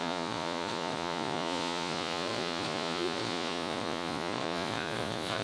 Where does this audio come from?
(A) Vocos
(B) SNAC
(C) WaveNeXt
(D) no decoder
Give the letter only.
A